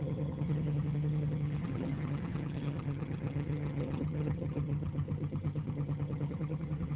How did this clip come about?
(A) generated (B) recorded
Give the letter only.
A